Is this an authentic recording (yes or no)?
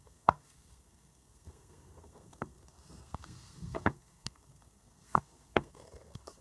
no